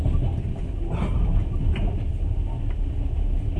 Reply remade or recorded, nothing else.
recorded